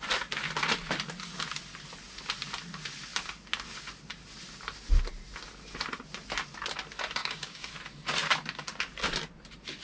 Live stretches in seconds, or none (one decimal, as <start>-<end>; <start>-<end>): 0.0-7.2; 7.7-9.8